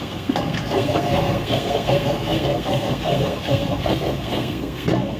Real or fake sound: fake